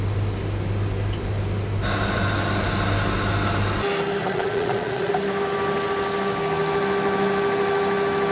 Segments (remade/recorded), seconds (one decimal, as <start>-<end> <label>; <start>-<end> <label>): 0.0-4.2 recorded; 4.2-5.1 remade; 5.1-8.3 recorded